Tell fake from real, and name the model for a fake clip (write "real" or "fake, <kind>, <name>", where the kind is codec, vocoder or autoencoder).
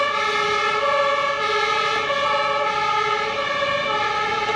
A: real